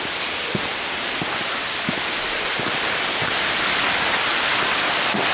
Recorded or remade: recorded